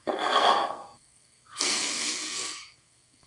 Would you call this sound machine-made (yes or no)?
yes